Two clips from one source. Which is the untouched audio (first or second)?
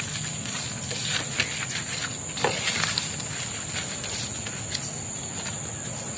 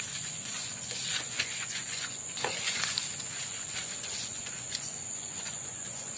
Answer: first